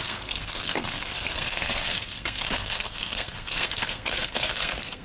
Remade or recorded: remade